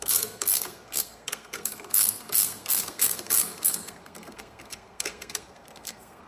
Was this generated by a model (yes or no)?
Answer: yes